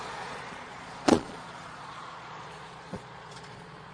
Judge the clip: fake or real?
fake